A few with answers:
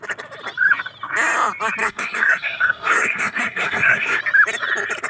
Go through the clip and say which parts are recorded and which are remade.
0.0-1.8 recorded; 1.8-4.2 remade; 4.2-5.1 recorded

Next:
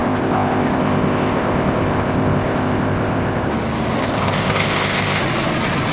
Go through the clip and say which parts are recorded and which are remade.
0.0-3.5 remade; 3.5-4.0 recorded; 4.0-5.2 remade; 5.2-5.9 recorded